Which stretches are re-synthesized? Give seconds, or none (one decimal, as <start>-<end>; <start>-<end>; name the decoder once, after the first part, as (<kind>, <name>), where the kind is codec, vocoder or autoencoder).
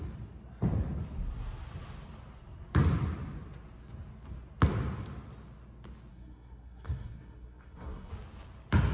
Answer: 6.1-8.1 (codec, SNAC)